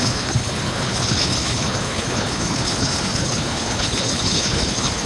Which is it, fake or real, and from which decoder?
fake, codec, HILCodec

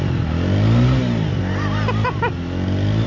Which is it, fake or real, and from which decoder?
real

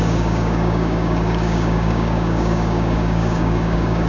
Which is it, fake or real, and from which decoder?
fake, codec, DAC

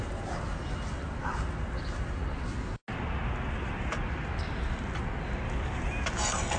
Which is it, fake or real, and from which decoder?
real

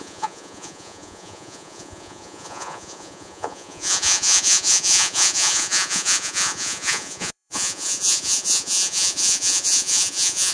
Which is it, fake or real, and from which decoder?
fake, vocoder, Vocos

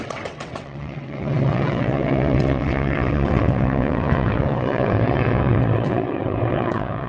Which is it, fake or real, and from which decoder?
fake, vocoder, WaveNeXt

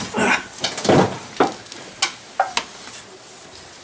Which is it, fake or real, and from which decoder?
real